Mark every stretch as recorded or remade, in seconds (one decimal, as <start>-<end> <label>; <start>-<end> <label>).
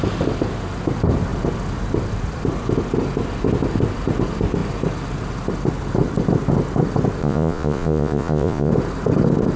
0.0-7.2 recorded; 7.2-8.7 remade; 8.7-9.6 recorded